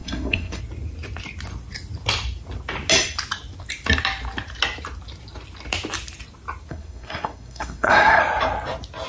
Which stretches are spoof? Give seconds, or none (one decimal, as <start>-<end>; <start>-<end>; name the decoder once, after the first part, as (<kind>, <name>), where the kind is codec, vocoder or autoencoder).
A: 0.0-0.6 (codec, SNAC); 6.7-8.2